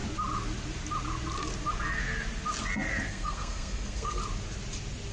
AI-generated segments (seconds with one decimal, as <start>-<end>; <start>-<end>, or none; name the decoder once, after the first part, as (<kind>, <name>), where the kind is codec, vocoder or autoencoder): 3.1-4.2 (codec, SNAC)